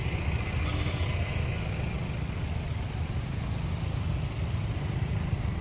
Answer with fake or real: real